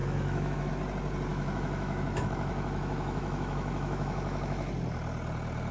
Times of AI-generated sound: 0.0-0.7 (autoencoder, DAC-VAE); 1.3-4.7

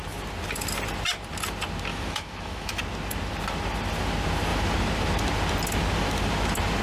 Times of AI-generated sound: 1.9-2.8 (autoencoder, DAC-VAE)

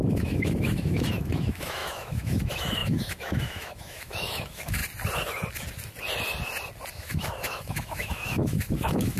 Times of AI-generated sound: 0.0-4.8 (autoencoder, DAC-VAE); 6.9-9.2

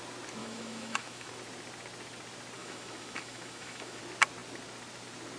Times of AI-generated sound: 0.4-1.3 (autoencoder, DAC-VAE); 2.6-4.0

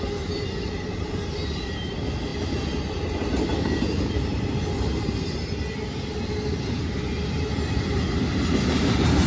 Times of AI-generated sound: none

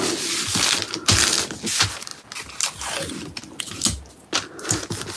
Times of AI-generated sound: none

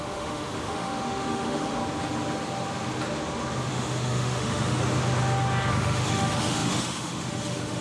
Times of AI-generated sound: 0.0-1.8 (autoencoder, DAC-VAE); 3.7-4.8; 5.7-7.8

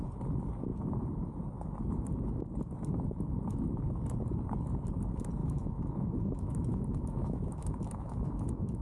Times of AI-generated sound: 5.4-8.8 (autoencoder, DAC-VAE)